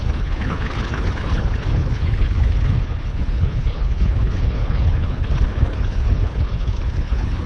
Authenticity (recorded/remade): remade